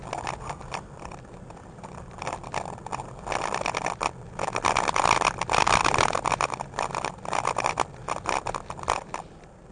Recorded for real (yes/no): yes